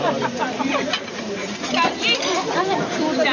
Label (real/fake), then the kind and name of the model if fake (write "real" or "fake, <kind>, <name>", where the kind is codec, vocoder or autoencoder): fake, vocoder, BigVGAN v2